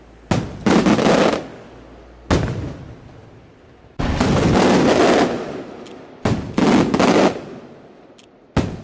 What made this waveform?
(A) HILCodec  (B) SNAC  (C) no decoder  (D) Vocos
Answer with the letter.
C